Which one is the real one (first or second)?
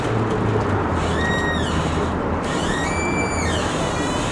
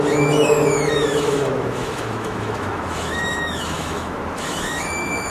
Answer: first